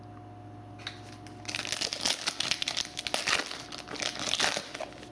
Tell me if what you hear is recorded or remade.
recorded